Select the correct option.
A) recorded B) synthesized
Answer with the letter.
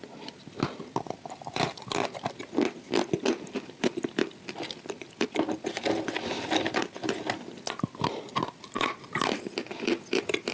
A